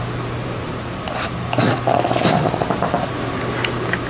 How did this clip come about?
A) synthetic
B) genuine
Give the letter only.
B